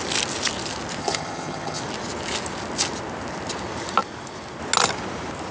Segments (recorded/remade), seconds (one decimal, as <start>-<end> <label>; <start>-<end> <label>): 0.0-1.0 recorded; 1.0-1.8 remade; 1.8-5.5 recorded

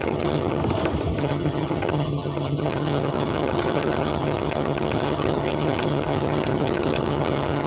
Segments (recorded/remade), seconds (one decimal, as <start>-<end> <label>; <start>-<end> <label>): 0.0-0.6 remade; 0.6-1.2 recorded; 1.2-7.7 remade

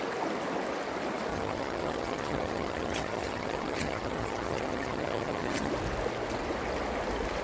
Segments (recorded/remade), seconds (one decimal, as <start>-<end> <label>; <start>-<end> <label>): 0.0-1.3 recorded; 1.3-5.7 remade; 5.7-7.4 recorded

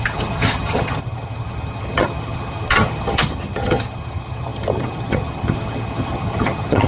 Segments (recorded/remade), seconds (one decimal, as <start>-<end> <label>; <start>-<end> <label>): 0.0-6.9 remade

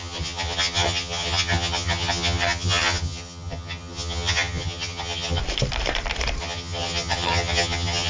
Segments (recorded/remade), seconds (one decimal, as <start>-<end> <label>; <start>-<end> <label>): 0.0-5.4 remade; 5.4-6.4 recorded; 6.4-8.1 remade